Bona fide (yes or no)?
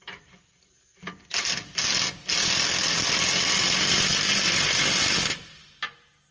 yes